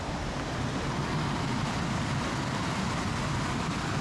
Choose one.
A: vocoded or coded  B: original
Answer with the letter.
B